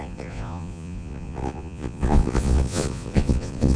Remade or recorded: remade